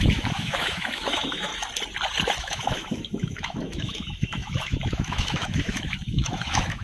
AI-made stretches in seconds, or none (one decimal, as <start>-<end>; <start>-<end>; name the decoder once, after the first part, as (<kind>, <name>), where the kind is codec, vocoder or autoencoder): 0.0-1.5 (autoencoder, DAC-VAE); 2.4-6.8